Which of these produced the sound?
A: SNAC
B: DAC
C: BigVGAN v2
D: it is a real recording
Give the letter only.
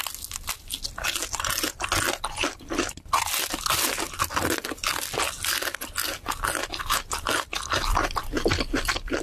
D